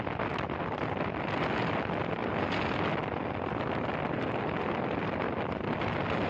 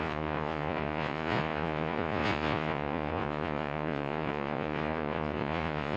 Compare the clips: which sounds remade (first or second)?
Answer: second